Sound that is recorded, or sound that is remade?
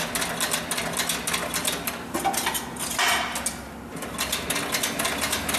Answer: recorded